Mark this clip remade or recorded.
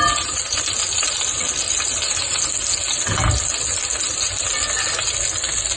recorded